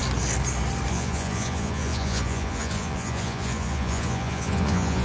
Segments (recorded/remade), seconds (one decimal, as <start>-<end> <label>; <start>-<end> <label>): 0.0-0.9 recorded; 0.9-5.0 remade